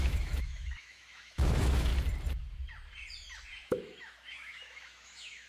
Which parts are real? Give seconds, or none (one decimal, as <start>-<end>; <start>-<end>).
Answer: 1.9-3.5